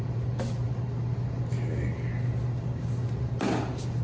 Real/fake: real